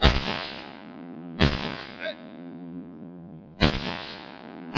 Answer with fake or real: fake